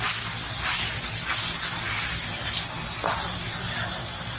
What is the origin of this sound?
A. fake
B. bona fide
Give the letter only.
B